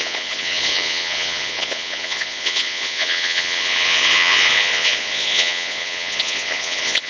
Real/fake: fake